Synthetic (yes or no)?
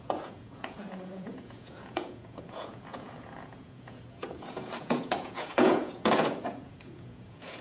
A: yes